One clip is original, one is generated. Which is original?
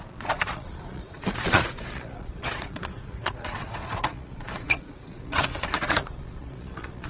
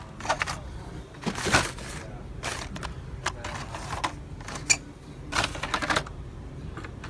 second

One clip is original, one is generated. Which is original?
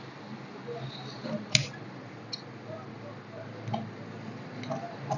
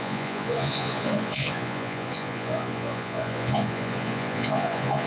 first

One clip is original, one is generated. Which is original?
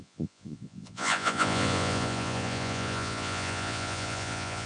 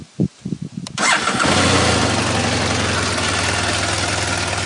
second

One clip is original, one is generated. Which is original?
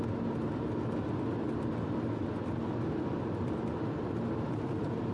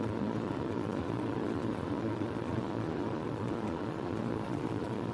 first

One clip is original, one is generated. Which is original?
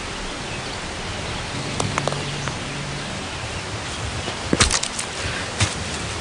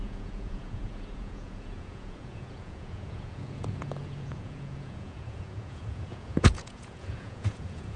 first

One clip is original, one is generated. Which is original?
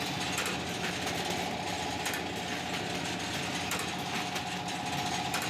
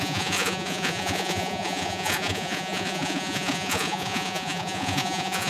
first